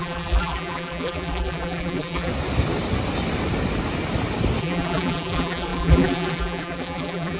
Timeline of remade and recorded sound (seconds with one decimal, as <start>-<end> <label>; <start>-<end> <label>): 0.0-2.3 remade; 2.3-4.6 recorded; 4.6-7.4 remade